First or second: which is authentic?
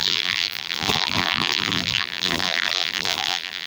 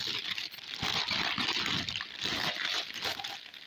second